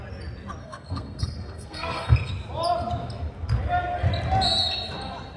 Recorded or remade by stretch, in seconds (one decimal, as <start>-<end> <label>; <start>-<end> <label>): 0.0-0.6 recorded; 0.6-2.3 remade; 2.3-5.4 recorded